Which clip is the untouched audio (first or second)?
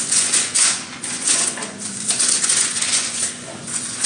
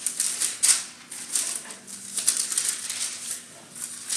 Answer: second